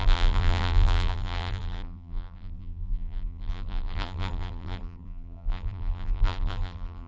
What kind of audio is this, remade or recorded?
remade